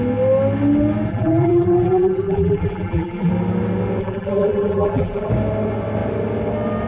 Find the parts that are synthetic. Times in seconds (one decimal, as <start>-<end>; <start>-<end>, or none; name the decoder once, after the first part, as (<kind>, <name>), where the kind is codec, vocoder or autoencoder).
1.1-3.3 (vocoder, BigVGAN v2); 4.0-5.3